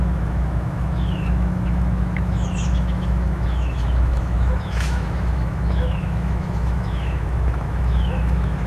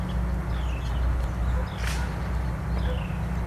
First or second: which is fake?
first